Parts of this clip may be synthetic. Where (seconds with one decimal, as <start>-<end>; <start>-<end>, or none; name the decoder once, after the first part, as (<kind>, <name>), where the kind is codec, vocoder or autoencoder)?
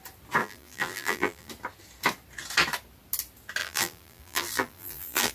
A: 0.4-1.5 (vocoder, BigVGAN v2); 3.6-5.3